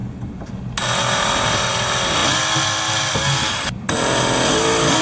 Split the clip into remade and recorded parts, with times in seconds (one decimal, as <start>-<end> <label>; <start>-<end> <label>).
0.0-1.0 recorded; 1.0-1.7 remade; 1.7-5.0 recorded